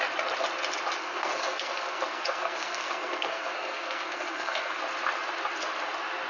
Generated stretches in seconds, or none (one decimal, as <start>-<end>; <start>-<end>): 1.0-4.8